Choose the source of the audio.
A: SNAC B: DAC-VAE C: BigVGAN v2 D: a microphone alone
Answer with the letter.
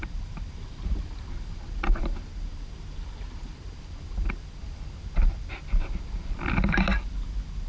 D